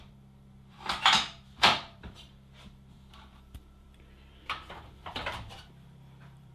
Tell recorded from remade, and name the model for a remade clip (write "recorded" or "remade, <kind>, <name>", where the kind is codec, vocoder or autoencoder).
remade, vocoder, BigVGAN v2